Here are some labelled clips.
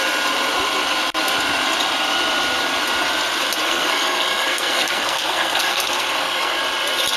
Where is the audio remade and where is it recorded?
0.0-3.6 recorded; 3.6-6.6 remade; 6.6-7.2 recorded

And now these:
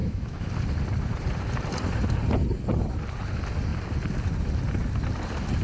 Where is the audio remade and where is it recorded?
0.0-0.5 remade; 0.5-5.6 recorded

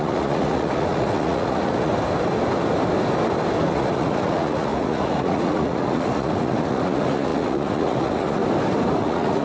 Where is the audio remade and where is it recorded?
0.0-1.9 remade; 1.9-3.7 recorded; 3.7-8.4 remade; 8.4-9.0 recorded; 9.0-9.4 remade

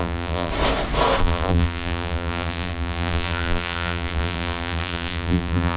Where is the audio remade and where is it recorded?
0.0-0.5 remade; 0.5-1.2 recorded; 1.2-5.8 remade